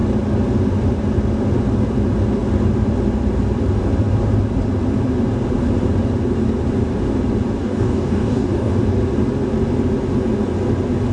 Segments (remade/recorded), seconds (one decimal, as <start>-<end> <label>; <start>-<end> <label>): 0.0-7.6 recorded; 7.6-8.7 remade; 8.7-11.1 recorded